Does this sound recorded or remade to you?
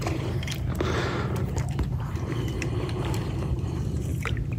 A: remade